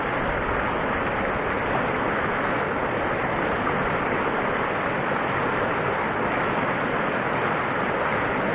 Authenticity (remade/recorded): recorded